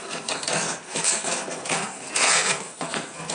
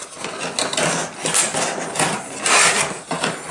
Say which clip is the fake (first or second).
first